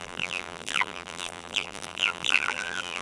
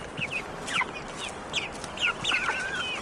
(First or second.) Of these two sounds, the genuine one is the second